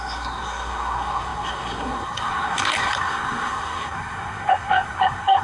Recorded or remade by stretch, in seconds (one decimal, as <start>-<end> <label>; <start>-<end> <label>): 0.0-5.4 remade